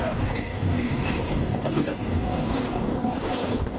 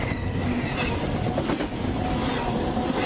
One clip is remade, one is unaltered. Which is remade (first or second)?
first